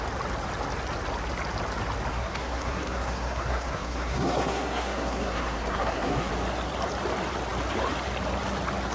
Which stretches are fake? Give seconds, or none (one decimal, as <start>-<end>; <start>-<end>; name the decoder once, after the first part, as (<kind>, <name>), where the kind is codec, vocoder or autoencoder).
2.1-6.3 (codec, SNAC)